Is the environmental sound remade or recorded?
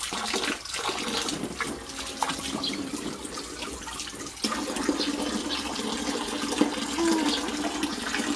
recorded